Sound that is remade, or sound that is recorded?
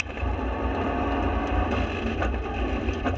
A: remade